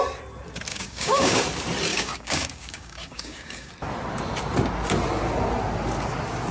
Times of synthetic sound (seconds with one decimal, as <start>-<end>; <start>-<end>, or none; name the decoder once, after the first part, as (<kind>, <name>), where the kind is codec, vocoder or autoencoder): 0.7-1.4 (codec, DAC); 1.9-3.7